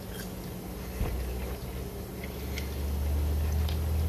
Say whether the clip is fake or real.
real